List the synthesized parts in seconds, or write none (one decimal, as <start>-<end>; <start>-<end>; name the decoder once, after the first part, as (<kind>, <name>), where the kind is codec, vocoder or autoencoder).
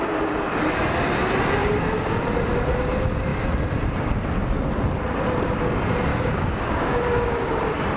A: 1.6-2.2 (codec, DAC); 6.1-7.0